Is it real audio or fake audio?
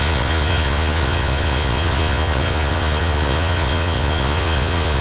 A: fake